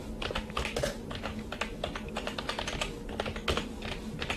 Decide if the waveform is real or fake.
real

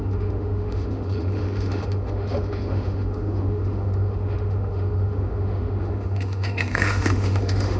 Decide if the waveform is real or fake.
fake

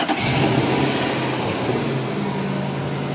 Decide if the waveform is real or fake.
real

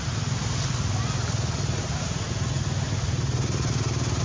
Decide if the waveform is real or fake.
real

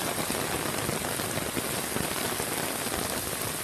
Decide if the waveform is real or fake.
real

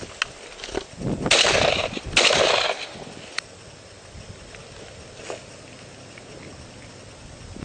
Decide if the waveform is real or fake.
real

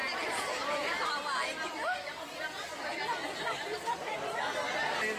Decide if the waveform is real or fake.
real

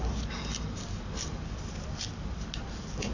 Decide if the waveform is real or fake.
real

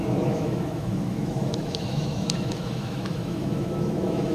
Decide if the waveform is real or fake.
fake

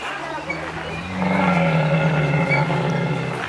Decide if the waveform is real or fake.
real